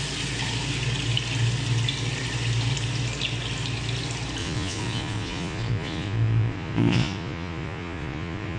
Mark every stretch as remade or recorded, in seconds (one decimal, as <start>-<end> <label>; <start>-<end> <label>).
0.0-4.4 recorded; 4.4-8.6 remade